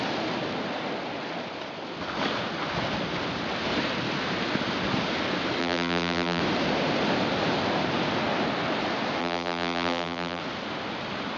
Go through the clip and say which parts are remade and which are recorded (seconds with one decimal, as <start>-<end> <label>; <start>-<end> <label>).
0.0-5.6 recorded; 5.6-6.4 remade; 6.4-9.2 recorded; 9.2-10.4 remade; 10.4-11.4 recorded